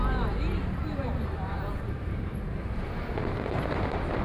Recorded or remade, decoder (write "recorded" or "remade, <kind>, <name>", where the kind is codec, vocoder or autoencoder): remade, vocoder, BigVGAN v2